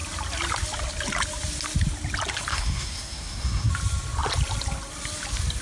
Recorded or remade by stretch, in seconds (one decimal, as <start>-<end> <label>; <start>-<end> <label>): 0.0-2.5 recorded; 2.5-3.7 remade; 3.7-5.6 recorded